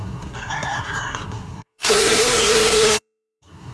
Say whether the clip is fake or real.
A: fake